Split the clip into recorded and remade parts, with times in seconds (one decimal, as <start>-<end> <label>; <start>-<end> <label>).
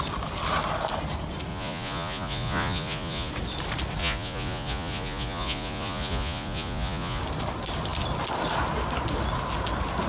0.0-1.5 recorded; 1.5-3.3 remade; 3.3-4.0 recorded; 4.0-7.2 remade; 7.2-10.1 recorded